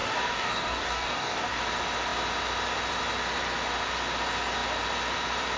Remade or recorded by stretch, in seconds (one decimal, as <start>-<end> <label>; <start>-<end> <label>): 0.0-1.6 remade; 1.6-5.6 recorded